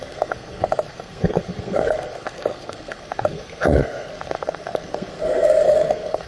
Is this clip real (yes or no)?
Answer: no